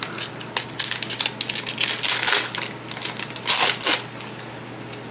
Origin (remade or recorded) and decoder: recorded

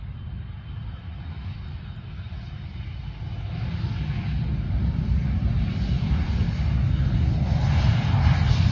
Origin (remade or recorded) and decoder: recorded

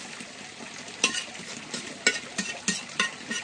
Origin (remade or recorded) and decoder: recorded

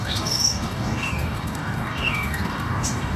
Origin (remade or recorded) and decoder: remade, codec, DAC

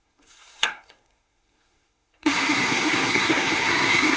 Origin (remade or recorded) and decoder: remade, codec, SNAC